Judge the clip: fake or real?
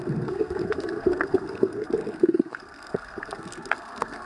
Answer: fake